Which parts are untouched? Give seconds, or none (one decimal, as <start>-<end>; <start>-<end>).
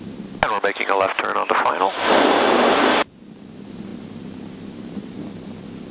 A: 0.0-5.9